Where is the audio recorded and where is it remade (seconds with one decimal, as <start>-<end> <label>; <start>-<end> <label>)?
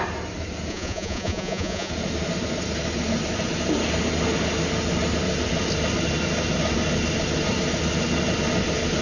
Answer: 0.0-0.7 recorded; 0.7-1.9 remade; 1.9-9.0 recorded